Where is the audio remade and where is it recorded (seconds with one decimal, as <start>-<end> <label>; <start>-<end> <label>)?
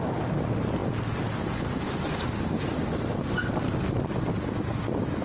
0.0-5.2 recorded